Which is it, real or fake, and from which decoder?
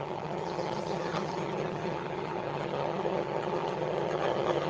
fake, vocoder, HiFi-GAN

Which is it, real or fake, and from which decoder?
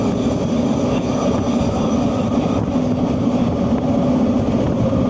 real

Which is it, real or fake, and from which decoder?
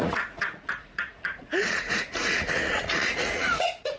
fake, vocoder, Vocos